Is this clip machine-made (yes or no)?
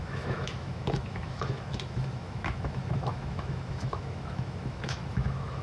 yes